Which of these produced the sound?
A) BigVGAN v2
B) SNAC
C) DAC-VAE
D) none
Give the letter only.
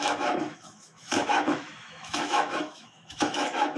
C